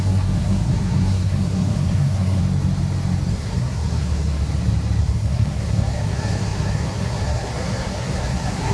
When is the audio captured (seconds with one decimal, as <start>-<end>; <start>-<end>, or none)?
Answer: 2.4-3.3; 4.4-5.0